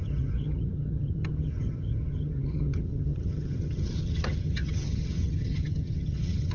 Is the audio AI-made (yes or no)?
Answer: yes